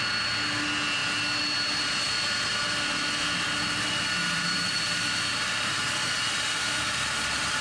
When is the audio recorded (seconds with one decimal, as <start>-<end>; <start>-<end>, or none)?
0.0-4.2